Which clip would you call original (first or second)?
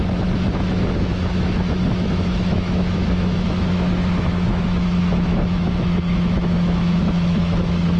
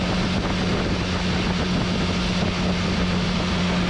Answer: second